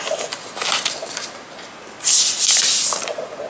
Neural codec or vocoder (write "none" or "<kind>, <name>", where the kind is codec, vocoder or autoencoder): none